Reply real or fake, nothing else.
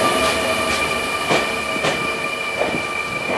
real